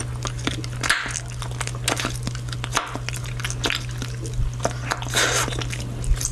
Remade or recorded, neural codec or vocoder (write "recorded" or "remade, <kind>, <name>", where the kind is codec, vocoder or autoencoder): recorded